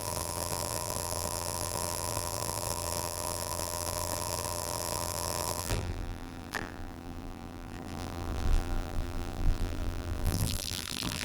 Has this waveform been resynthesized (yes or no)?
yes